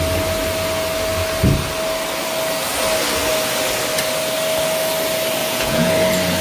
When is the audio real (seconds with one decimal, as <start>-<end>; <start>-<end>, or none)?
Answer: 0.0-5.4; 5.9-6.4